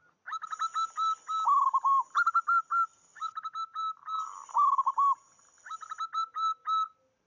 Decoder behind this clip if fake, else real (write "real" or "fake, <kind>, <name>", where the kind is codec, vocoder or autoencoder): real